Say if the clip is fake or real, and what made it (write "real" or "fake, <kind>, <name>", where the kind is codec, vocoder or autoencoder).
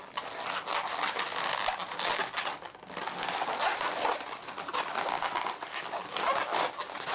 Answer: real